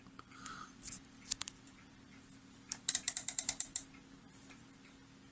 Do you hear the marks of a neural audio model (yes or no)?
yes